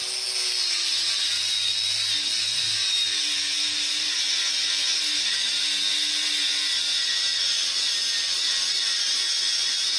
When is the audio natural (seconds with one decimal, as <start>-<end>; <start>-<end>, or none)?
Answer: 0.0-10.0

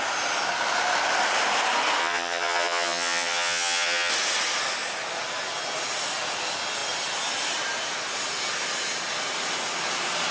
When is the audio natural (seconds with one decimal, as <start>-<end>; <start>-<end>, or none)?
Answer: 0.0-2.0; 4.1-10.3

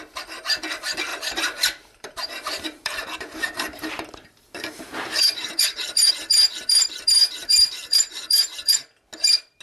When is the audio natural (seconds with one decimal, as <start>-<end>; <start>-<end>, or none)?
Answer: 0.0-1.1; 6.1-7.2; 8.7-9.6

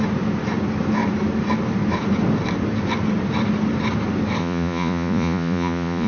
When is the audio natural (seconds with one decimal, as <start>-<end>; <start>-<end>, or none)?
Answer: 0.0-4.4

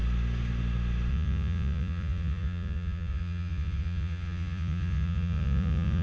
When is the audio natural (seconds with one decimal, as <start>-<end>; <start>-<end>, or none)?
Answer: 0.0-1.1

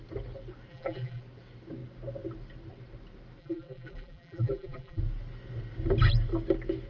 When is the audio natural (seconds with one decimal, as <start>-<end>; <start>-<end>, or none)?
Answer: 0.0-0.7; 1.2-3.4; 5.0-6.9

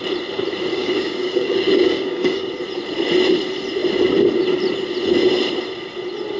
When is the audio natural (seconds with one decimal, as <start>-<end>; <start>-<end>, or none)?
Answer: 0.0-0.7; 2.5-6.4

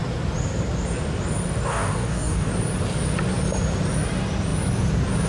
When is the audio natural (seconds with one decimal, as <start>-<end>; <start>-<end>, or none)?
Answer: 0.0-1.7; 2.5-5.3